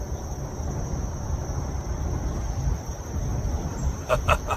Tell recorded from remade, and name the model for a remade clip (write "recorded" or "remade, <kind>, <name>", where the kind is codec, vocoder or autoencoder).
recorded